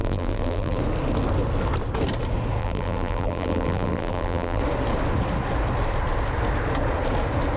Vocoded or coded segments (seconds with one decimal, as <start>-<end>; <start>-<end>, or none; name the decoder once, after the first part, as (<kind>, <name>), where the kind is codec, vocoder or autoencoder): 0.0-0.8 (vocoder, BigVGAN v2); 2.6-4.6